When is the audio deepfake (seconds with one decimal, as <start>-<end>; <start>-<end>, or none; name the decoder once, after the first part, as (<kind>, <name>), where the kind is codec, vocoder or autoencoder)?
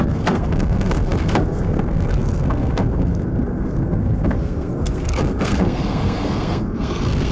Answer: 0.0-7.3 (codec, SNAC)